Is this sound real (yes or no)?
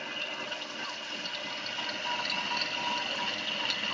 yes